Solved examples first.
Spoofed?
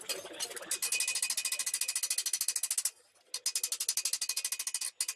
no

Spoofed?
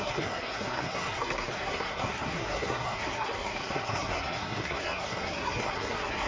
yes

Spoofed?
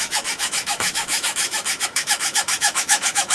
yes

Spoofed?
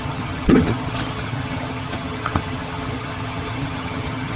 yes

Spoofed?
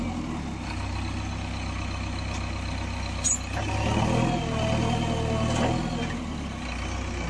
no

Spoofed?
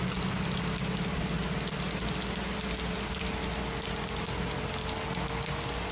no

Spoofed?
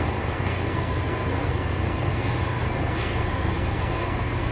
yes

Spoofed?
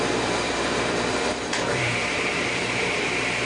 yes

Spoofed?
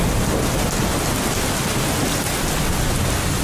no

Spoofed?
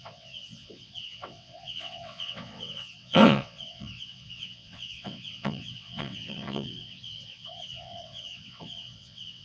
yes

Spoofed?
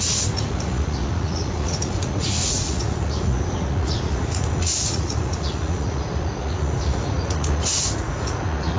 yes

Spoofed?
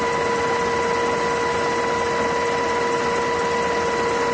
no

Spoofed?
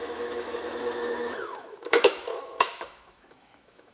yes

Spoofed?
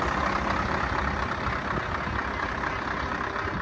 no